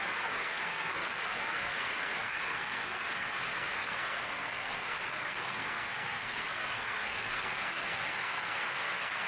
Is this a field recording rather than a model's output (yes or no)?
no